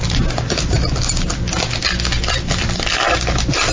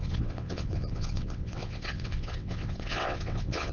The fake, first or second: second